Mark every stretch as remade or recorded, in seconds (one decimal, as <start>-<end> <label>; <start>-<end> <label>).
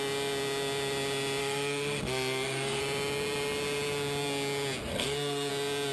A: 0.0-1.4 recorded; 1.4-2.8 remade; 2.8-4.9 recorded; 4.9-5.5 remade; 5.5-5.9 recorded